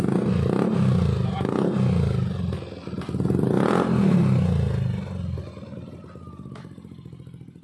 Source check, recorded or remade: recorded